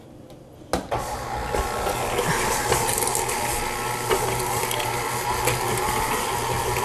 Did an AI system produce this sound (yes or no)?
no